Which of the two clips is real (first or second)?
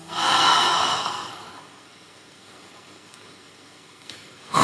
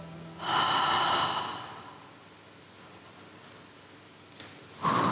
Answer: second